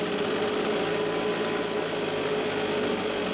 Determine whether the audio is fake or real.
real